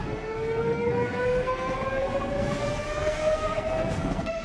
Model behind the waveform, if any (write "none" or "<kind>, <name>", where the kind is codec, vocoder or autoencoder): codec, SNAC